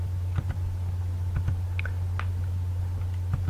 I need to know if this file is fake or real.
real